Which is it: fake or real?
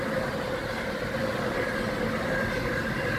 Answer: real